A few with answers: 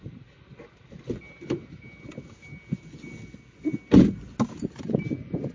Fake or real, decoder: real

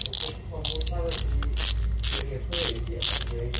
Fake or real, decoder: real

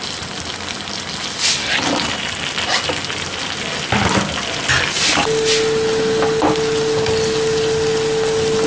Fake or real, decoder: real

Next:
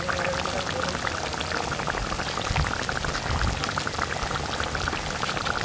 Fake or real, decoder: real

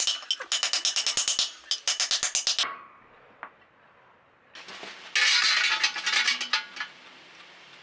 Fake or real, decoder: real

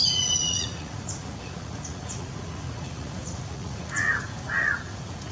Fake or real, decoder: fake, vocoder, Vocos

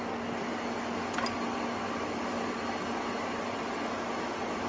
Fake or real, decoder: real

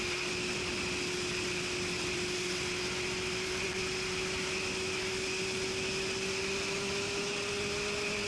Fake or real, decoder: real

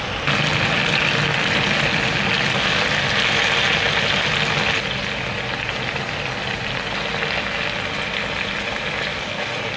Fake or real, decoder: real